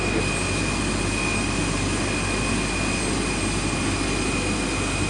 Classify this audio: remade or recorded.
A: recorded